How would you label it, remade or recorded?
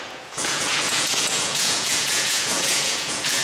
remade